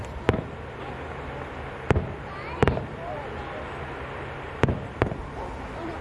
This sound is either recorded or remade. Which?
recorded